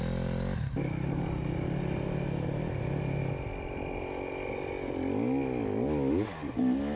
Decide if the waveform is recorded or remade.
recorded